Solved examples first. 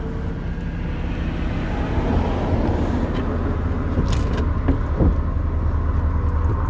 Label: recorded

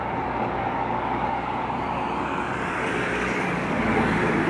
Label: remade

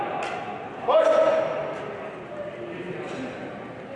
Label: recorded